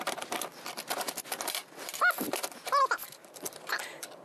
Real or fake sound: real